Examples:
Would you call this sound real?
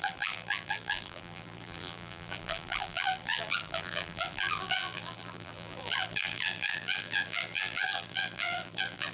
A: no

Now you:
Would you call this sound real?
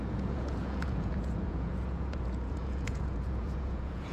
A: no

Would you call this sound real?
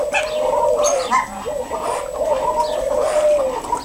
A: yes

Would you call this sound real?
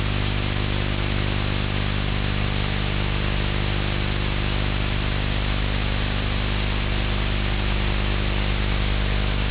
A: yes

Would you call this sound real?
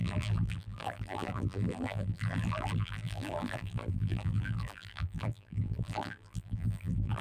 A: no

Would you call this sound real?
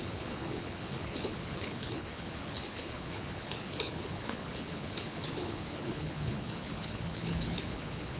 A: no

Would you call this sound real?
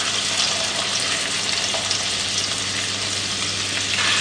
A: yes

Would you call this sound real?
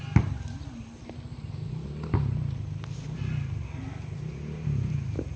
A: yes